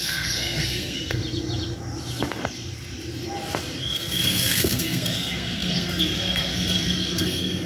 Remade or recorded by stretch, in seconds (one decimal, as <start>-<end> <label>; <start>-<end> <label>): 0.0-1.2 remade; 1.2-3.8 recorded; 3.8-7.7 remade